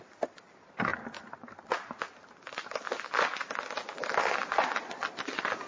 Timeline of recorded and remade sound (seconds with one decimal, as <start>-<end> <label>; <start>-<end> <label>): 0.0-5.7 recorded